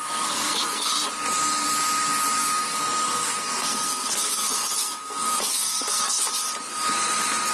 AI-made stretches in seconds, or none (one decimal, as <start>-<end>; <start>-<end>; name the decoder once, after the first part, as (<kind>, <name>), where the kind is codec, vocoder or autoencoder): 0.0-1.1 (codec, SNAC); 2.4-6.2